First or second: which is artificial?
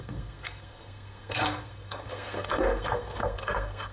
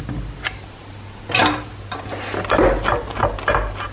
first